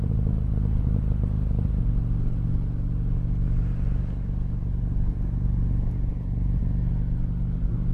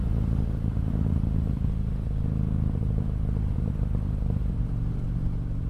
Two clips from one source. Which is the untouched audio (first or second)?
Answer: first